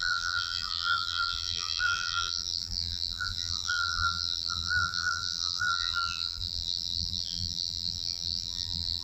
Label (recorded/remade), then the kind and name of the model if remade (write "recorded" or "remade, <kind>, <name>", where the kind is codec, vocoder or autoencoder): remade, vocoder, BigVGAN v2